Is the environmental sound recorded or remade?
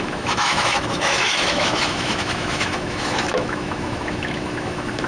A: remade